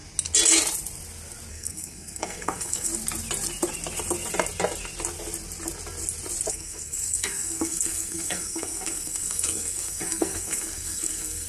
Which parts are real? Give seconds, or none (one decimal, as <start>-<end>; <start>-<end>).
0.0-1.5; 2.9-6.5